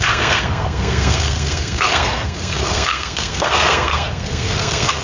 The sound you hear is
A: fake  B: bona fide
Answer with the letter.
A